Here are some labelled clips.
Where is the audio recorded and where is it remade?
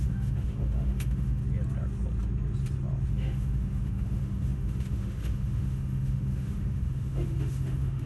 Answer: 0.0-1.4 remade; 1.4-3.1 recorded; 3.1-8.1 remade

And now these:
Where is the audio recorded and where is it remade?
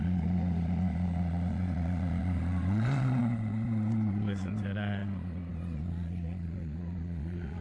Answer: 0.0-7.6 remade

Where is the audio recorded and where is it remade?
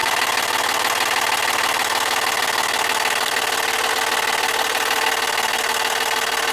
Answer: 0.0-6.5 recorded